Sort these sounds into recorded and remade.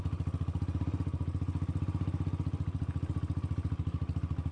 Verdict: recorded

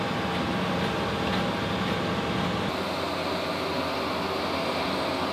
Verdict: recorded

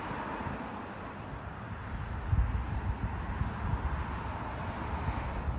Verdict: recorded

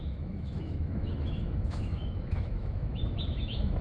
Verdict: remade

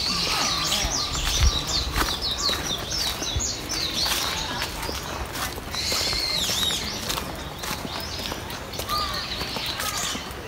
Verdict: recorded